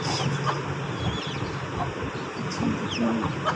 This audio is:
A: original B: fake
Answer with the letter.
A